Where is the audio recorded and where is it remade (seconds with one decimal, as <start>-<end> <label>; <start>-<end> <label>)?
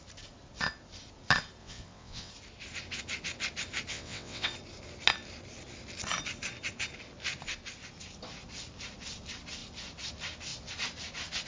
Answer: 0.0-1.6 recorded; 1.6-2.3 remade; 2.3-3.9 recorded; 3.9-4.5 remade; 4.5-11.5 recorded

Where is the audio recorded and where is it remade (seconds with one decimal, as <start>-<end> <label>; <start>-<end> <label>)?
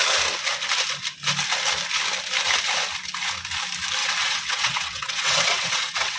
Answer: 0.0-4.0 recorded; 4.0-6.2 remade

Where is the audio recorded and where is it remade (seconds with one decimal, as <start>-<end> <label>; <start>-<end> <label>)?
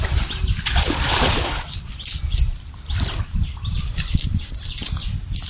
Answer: 0.0-5.5 recorded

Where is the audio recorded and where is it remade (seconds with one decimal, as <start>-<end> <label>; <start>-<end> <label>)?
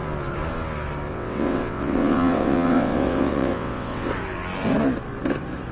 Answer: 0.0-1.1 recorded; 1.1-4.1 remade; 4.1-5.7 recorded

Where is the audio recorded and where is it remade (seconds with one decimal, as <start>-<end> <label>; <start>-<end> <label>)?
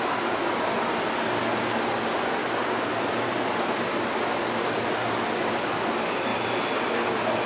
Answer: 0.0-7.5 recorded